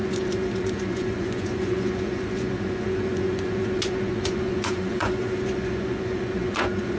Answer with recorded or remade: remade